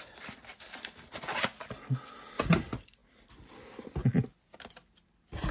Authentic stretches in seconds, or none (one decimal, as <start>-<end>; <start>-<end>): 0.0-0.5; 1.4-5.5